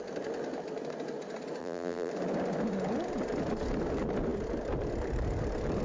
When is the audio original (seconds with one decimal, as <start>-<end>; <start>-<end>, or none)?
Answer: 0.0-1.6; 2.1-5.8

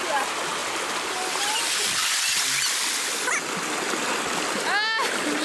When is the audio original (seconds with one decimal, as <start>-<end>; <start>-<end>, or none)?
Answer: 0.0-5.4

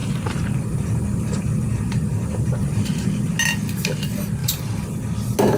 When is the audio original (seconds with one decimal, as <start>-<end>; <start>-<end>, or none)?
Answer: 3.4-5.6